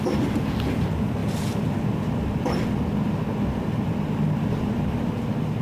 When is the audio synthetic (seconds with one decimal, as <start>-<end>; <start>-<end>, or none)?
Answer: none

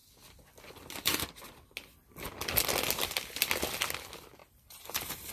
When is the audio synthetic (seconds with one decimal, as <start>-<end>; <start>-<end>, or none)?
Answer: 4.4-5.3

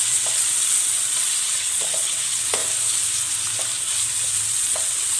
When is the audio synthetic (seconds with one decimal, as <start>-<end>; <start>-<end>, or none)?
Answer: 0.0-2.6; 4.5-5.2

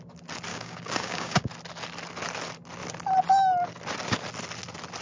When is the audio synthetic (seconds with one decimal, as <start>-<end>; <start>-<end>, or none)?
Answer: 0.5-1.5